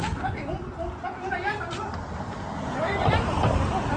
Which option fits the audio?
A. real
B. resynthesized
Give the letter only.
A